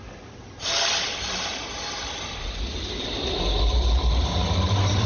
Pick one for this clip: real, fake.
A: real